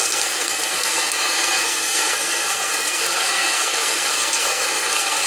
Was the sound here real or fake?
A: fake